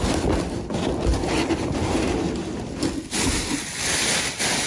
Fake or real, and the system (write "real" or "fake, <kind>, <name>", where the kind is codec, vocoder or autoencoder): real